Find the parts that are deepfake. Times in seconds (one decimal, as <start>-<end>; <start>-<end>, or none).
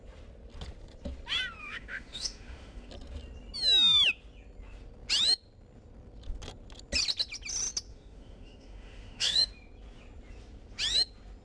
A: 1.6-2.9; 7.9-9.5